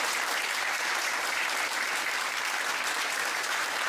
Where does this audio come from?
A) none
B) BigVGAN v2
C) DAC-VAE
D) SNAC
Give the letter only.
B